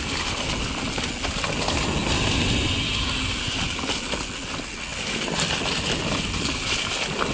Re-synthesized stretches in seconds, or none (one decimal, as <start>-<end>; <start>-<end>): none